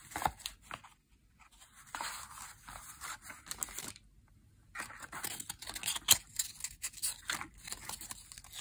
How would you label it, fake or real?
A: real